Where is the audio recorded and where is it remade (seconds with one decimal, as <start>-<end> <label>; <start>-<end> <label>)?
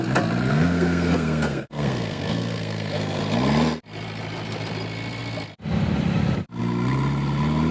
0.0-0.5 recorded; 0.5-3.2 remade; 3.2-7.7 recorded